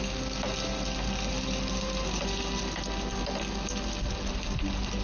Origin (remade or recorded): recorded